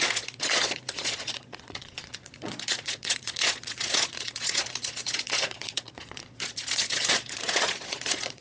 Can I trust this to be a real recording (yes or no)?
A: no